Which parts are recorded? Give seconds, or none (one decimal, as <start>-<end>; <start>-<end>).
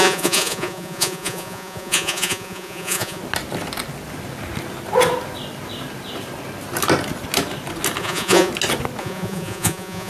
3.2-8.0; 8.5-9.0